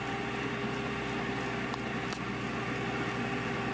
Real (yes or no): yes